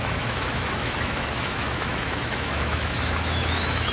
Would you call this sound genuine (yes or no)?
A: no